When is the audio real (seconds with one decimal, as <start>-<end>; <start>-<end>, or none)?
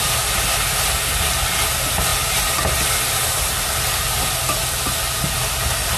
0.0-6.0